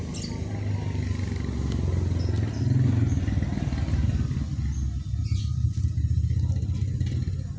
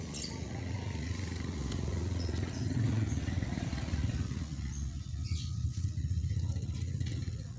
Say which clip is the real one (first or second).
first